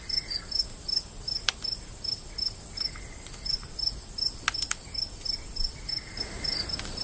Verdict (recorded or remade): recorded